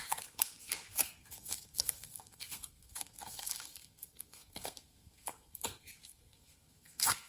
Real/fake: fake